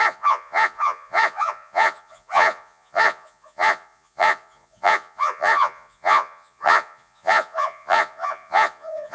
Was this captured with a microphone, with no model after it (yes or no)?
no